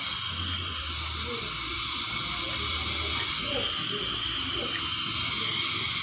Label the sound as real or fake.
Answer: real